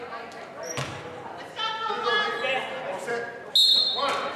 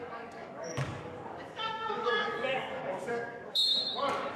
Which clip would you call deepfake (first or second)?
second